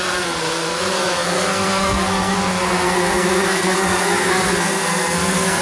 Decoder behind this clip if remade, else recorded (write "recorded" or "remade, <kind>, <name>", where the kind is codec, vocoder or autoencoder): remade, codec, SNAC